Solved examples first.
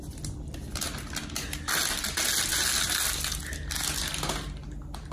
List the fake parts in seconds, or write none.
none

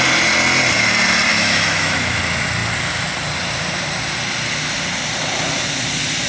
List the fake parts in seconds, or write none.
1.3-2.2 (autoencoder, DAC-VAE)